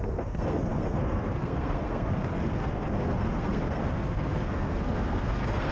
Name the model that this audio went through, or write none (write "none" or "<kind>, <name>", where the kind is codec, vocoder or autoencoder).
codec, SNAC